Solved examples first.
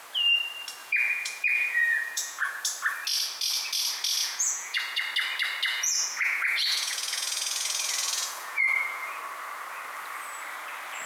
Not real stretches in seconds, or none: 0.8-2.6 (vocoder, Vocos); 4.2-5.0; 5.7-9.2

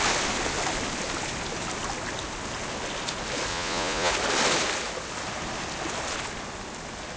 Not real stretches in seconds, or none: 3.5-4.1 (vocoder, Vocos)